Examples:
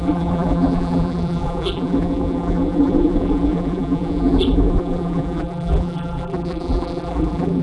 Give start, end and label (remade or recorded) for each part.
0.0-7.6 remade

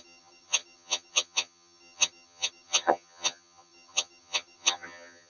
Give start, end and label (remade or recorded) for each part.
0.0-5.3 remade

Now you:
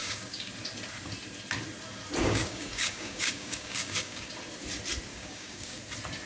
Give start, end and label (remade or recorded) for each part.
0.0-0.5 remade; 0.5-2.2 recorded; 2.2-4.3 remade; 4.3-5.1 recorded; 5.1-5.8 remade; 5.8-6.3 recorded